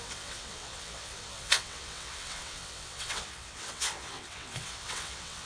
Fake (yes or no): yes